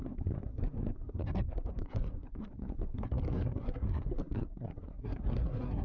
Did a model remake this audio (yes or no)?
yes